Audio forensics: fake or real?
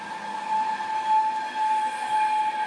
real